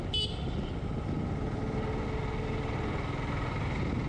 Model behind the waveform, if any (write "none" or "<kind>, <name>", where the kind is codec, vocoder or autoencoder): none